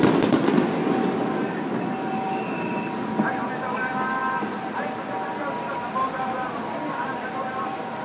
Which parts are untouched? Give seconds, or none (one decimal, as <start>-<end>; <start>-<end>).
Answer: 0.0-8.0